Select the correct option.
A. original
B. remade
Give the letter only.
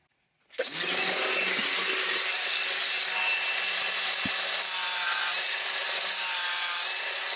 A